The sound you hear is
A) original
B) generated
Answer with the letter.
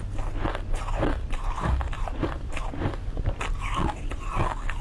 A